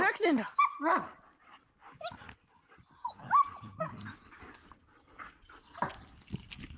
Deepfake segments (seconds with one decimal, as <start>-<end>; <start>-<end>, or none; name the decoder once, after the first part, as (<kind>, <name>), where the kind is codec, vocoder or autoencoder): none